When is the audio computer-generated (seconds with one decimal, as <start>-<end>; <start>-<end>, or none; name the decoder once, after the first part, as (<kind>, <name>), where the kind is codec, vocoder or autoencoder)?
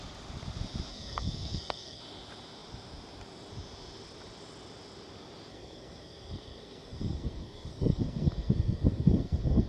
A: 0.9-2.0 (codec, SNAC); 5.5-9.7